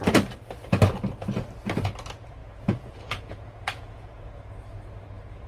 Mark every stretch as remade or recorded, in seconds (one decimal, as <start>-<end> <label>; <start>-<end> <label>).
0.0-2.4 recorded; 2.4-4.4 remade; 4.4-5.5 recorded